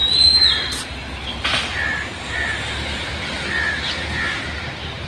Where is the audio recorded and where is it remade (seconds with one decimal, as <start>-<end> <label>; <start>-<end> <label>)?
0.0-5.1 recorded

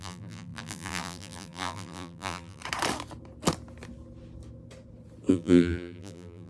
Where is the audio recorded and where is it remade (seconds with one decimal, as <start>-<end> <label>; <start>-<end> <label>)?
0.0-2.6 remade; 2.6-5.3 recorded; 5.3-6.5 remade

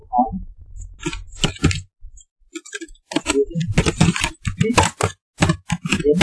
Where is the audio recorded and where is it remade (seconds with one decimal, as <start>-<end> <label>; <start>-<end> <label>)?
0.0-6.2 recorded

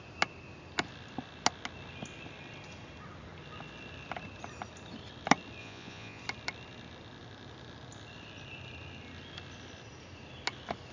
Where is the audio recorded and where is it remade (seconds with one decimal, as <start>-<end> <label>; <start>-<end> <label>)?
0.0-5.6 recorded; 5.6-6.2 remade; 6.2-10.9 recorded

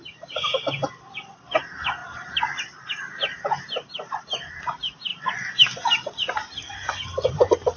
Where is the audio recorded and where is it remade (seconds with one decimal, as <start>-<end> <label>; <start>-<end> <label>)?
0.0-7.8 recorded

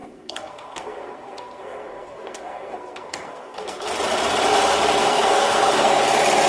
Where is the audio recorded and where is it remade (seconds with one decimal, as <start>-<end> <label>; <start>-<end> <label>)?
0.0-3.9 remade; 3.9-5.0 recorded; 5.0-6.0 remade; 6.0-6.5 recorded

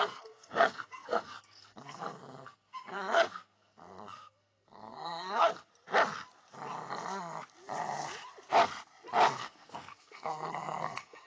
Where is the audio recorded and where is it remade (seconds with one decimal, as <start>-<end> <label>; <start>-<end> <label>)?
0.0-5.7 remade; 5.7-9.3 recorded; 9.3-11.3 remade